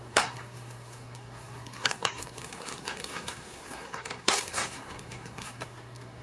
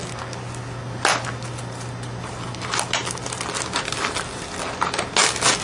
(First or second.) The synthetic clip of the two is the first